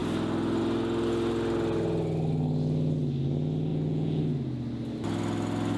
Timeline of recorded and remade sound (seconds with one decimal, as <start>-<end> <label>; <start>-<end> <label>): 0.0-3.7 recorded; 3.7-4.2 remade; 4.2-5.8 recorded